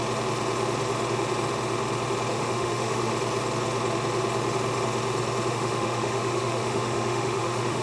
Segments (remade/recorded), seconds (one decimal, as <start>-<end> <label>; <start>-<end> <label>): 0.0-2.3 recorded; 2.3-3.1 remade; 3.1-5.5 recorded; 5.5-7.8 remade